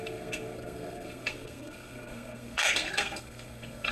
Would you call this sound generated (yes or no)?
yes